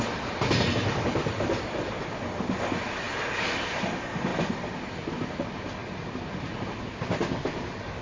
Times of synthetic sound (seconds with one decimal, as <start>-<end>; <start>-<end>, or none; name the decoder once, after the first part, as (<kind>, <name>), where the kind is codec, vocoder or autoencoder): none